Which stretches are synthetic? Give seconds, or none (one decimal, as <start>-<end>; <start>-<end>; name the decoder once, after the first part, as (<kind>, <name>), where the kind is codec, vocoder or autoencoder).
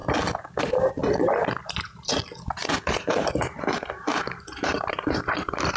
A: 0.6-1.0 (vocoder, BigVGAN v2); 1.6-2.2; 2.7-5.8